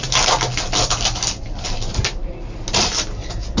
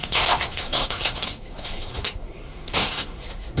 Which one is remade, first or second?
second